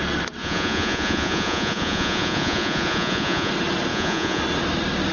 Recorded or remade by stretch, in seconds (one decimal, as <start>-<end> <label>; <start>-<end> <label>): 0.0-0.4 recorded; 0.4-3.5 remade; 3.5-3.9 recorded; 3.9-4.4 remade; 4.4-5.1 recorded